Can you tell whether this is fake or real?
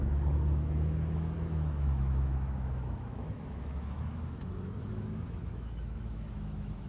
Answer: fake